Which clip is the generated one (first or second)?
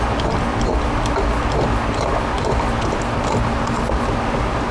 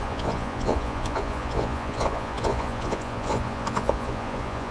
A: second